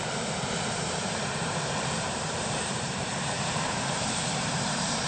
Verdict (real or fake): fake